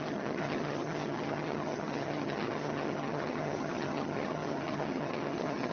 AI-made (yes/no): yes